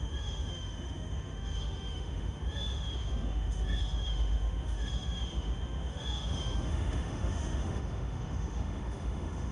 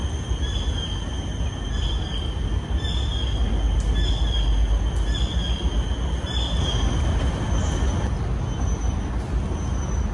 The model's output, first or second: first